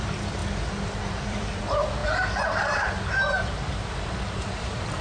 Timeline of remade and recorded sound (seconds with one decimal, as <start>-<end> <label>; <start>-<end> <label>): 0.0-0.4 remade; 0.4-1.0 recorded; 1.0-5.0 remade